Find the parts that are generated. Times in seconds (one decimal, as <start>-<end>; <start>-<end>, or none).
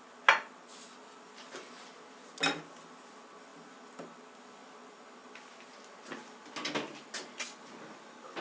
none